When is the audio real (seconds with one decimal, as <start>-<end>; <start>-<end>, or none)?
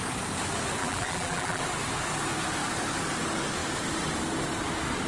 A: 0.0-0.8; 1.6-5.1